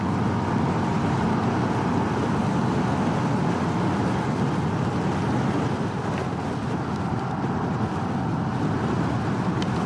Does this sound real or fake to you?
real